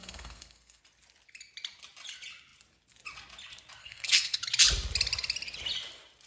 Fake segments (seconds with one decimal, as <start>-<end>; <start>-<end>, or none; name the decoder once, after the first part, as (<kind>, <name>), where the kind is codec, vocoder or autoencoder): 0.0-0.8 (codec, SNAC); 3.8-4.4